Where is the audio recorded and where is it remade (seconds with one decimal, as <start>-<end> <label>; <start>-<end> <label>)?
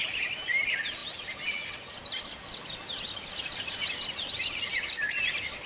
0.0-5.7 recorded